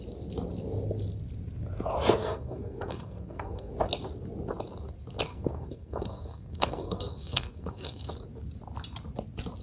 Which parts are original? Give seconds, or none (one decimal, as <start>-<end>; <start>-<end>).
0.0-2.2; 3.7-5.3; 8.1-9.6